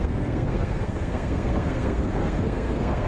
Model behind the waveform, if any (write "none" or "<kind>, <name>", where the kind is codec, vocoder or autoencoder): codec, SNAC